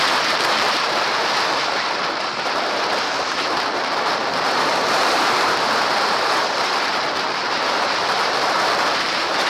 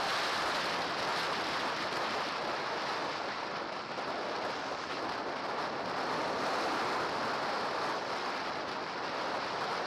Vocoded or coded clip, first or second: first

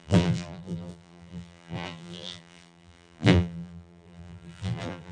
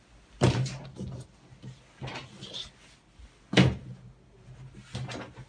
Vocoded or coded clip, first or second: first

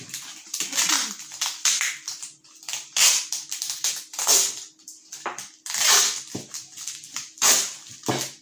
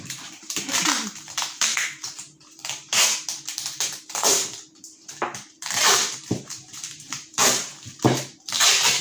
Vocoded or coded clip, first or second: second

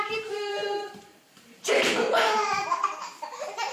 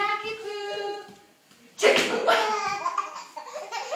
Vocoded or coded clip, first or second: first